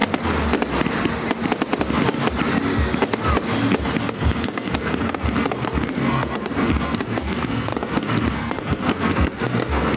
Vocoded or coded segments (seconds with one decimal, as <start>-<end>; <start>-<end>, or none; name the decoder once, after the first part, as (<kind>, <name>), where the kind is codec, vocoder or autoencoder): 4.0-10.0 (codec, SNAC)